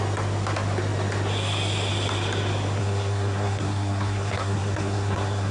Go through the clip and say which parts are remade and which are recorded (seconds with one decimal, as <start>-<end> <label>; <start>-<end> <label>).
0.0-2.8 recorded; 2.8-5.5 remade

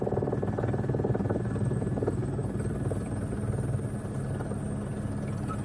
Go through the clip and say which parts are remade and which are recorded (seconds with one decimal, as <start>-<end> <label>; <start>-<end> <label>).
0.0-5.6 recorded

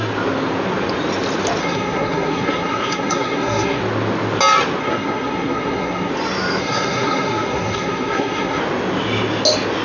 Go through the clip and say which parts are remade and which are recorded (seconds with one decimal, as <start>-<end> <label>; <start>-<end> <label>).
0.0-1.6 recorded; 1.6-3.8 remade; 3.8-4.8 recorded; 4.8-6.1 remade; 6.1-6.6 recorded; 6.6-8.6 remade; 8.6-9.8 recorded

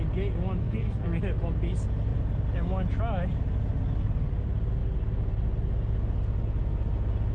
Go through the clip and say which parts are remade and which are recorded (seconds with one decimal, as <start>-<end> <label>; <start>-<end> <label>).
0.0-0.6 recorded; 0.6-1.2 remade; 1.2-7.3 recorded

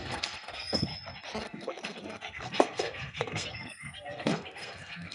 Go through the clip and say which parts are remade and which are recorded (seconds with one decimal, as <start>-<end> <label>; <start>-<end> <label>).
0.0-0.9 remade; 0.9-1.4 recorded; 1.4-5.1 remade